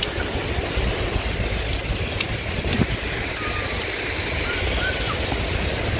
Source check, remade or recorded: recorded